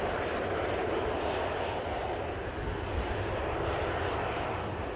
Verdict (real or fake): real